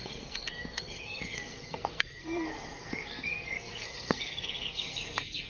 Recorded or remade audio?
remade